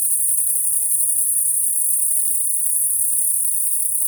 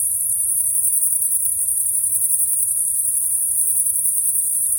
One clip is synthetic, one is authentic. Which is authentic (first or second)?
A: first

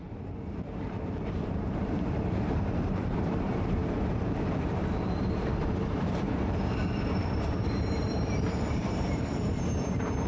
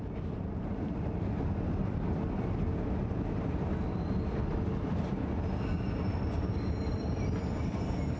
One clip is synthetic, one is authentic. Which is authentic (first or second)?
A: second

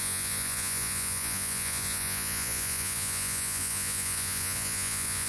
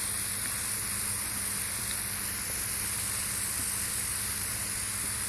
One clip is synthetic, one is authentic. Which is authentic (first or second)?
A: second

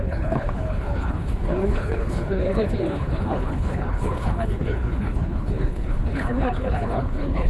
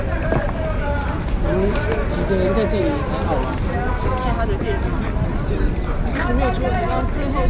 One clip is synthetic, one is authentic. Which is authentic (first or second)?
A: second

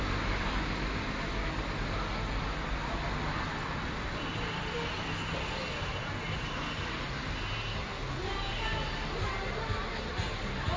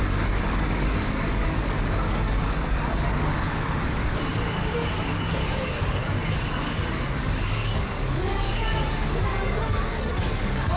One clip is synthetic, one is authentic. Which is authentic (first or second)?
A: first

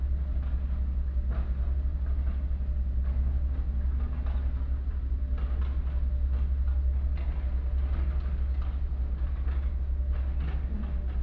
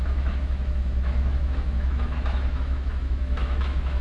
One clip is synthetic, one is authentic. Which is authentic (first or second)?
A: first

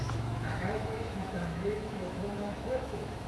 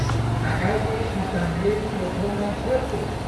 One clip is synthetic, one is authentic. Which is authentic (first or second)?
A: second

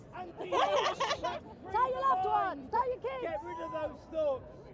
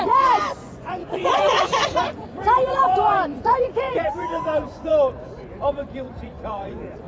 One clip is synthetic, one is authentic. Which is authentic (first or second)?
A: first